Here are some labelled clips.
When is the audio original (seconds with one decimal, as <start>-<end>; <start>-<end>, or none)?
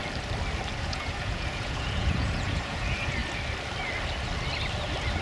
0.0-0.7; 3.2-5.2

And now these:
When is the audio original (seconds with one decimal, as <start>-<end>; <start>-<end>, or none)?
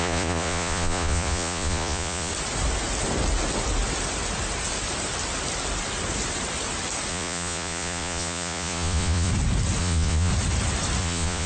2.3-7.1; 9.3-9.8; 10.3-11.0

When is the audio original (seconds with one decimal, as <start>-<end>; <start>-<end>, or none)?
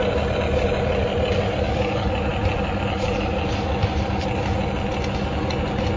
0.0-6.0